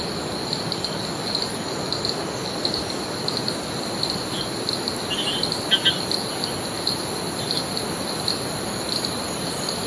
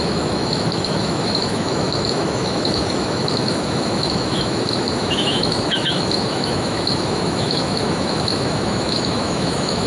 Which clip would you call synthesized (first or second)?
second